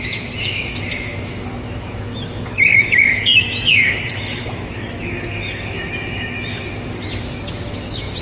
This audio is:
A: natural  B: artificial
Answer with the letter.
B